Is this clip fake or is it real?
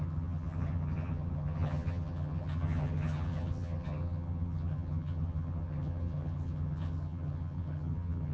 fake